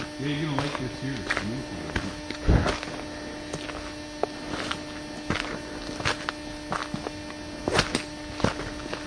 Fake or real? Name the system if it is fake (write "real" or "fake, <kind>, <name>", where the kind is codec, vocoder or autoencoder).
real